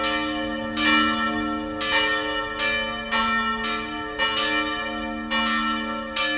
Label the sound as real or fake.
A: real